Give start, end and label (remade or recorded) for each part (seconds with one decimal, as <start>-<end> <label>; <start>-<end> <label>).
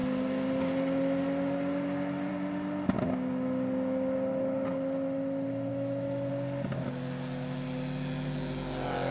0.0-5.7 recorded; 5.7-6.3 remade; 6.3-9.1 recorded